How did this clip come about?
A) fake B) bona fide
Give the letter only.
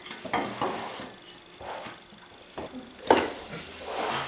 B